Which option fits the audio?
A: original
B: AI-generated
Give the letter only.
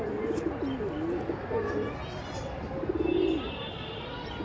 A